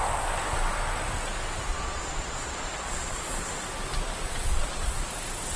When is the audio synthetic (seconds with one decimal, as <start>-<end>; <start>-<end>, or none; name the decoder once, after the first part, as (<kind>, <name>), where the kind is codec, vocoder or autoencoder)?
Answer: 1.7-3.5 (vocoder, Vocos); 4.2-5.1